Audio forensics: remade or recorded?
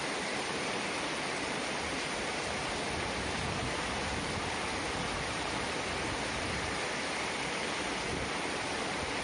recorded